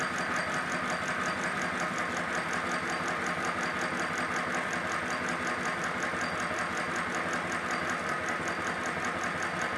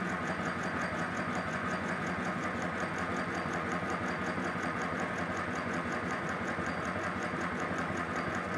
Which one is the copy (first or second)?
second